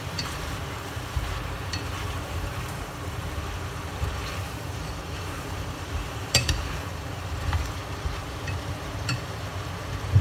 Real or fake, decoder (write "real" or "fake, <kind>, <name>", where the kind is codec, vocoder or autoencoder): fake, vocoder, BigVGAN v2